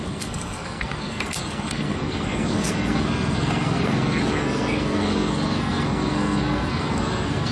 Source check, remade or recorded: remade